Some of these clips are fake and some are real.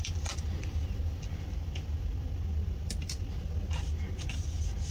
real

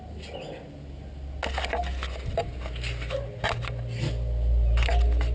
real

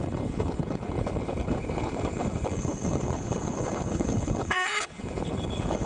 fake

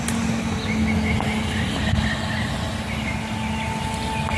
real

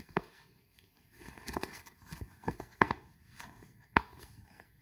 fake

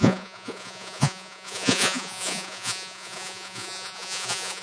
fake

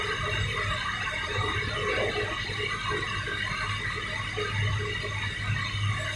real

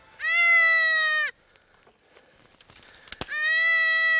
real